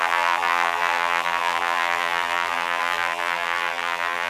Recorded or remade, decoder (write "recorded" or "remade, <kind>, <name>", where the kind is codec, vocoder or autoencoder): remade, vocoder, BigVGAN v2